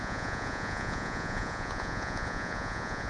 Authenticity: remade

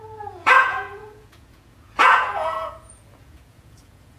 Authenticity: remade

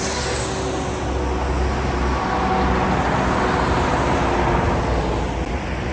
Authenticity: recorded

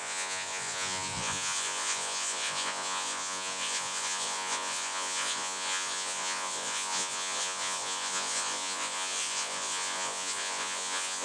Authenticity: remade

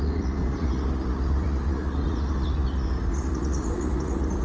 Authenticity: remade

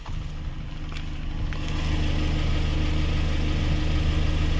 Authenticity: recorded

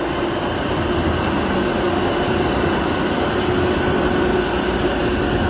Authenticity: recorded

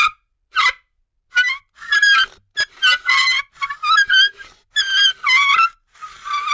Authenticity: recorded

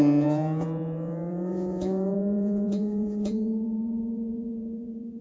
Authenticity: remade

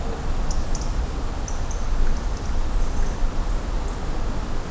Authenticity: recorded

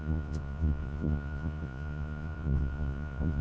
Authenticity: remade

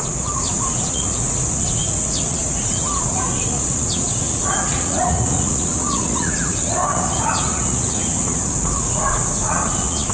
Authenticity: remade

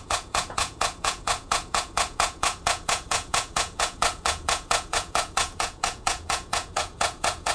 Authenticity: remade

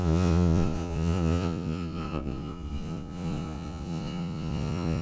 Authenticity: remade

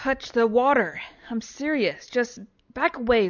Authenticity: recorded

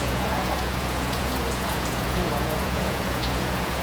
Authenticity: remade